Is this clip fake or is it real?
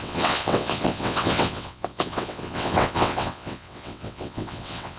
fake